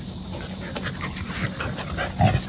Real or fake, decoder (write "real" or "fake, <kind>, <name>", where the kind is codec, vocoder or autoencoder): real